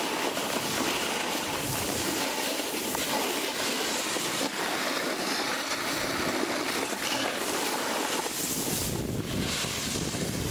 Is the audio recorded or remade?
recorded